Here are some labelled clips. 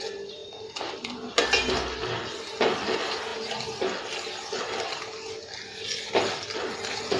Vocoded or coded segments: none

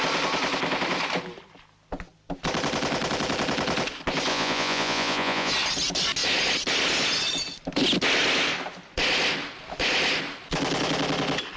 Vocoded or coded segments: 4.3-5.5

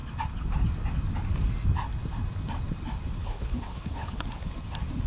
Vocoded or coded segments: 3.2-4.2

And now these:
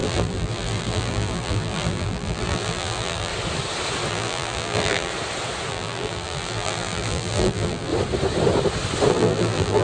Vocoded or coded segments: 0.0-3.3; 4.1-5.1; 5.7-7.9; 9.1-9.8

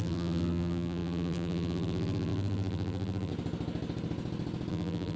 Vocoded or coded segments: 0.0-3.3; 4.7-5.2